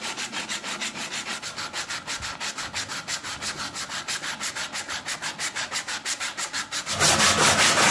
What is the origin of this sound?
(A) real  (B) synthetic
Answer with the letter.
A